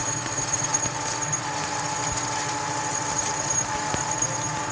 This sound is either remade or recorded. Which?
recorded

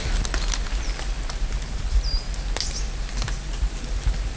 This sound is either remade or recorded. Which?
recorded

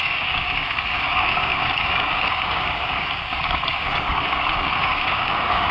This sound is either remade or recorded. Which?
remade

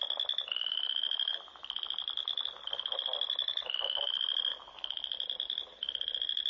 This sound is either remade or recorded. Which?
recorded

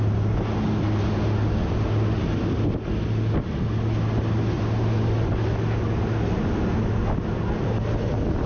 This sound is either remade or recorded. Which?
recorded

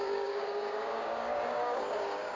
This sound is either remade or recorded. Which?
remade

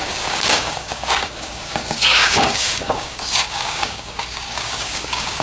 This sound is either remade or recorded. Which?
remade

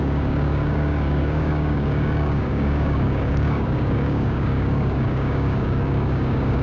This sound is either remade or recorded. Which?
remade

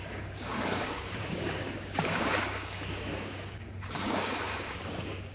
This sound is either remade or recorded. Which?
remade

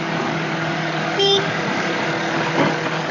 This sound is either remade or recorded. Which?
remade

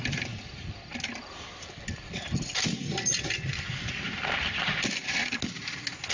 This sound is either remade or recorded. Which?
recorded